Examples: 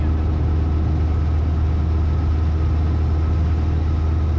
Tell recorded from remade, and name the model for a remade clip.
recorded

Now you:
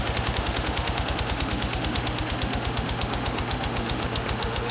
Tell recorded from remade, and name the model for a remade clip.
remade, autoencoder, DAC-VAE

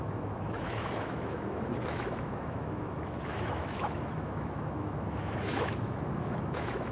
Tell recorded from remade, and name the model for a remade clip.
remade, autoencoder, DAC-VAE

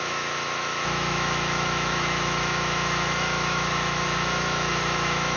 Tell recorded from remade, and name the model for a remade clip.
remade, autoencoder, DAC-VAE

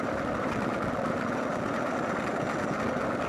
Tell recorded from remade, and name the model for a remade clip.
recorded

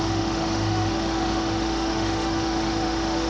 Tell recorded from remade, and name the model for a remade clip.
remade, autoencoder, DAC-VAE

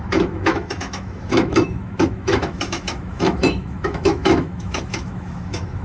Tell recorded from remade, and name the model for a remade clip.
remade, autoencoder, DAC-VAE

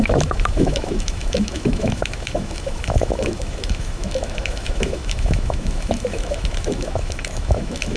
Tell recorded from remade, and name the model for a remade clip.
remade, autoencoder, DAC-VAE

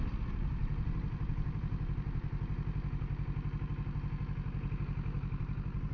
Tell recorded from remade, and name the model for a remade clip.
recorded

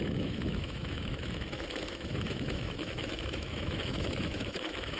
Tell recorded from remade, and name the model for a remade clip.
remade, autoencoder, DAC-VAE